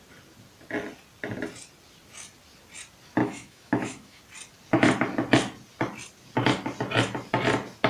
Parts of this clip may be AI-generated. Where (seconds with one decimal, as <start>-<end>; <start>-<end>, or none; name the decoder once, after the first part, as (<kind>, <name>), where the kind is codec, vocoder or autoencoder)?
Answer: 3.2-4.2 (autoencoder, DAC-VAE)